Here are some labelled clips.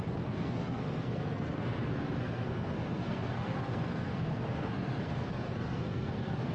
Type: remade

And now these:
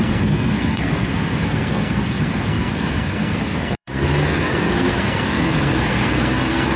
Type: remade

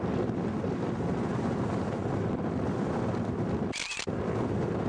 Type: recorded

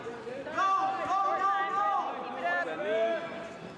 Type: recorded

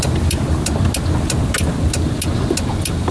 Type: recorded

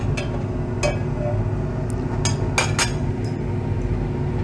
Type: recorded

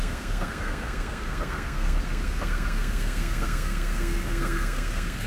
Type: remade